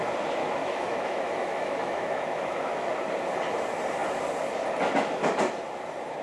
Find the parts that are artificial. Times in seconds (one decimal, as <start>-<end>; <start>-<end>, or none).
0.4-2.9